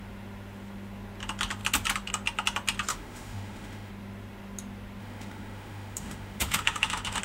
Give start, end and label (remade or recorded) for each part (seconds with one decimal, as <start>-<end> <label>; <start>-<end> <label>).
0.0-2.9 recorded; 2.9-3.9 remade; 3.9-5.0 recorded; 5.0-7.2 remade